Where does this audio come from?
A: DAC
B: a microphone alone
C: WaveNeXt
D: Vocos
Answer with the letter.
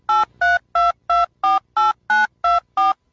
B